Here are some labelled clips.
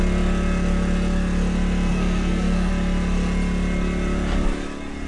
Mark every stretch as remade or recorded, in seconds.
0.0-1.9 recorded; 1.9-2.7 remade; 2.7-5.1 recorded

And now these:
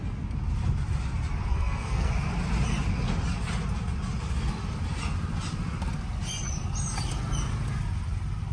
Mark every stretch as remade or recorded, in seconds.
0.0-1.5 recorded; 1.5-2.1 remade; 2.1-8.5 recorded

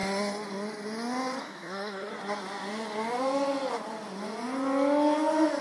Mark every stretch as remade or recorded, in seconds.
0.0-1.4 recorded; 1.4-2.1 remade; 2.1-5.6 recorded

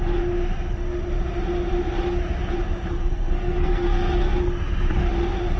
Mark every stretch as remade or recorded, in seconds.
0.0-3.1 recorded; 3.1-4.3 remade; 4.3-5.6 recorded

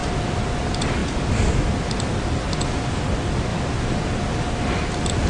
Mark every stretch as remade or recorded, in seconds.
0.0-5.3 recorded

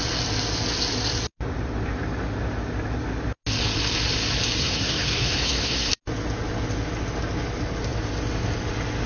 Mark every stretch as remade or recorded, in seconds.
0.0-4.6 recorded; 4.6-5.9 remade; 5.9-9.1 recorded

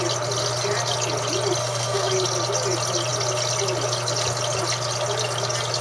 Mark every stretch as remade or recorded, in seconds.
0.0-1.6 recorded; 1.6-2.1 remade; 2.1-5.8 recorded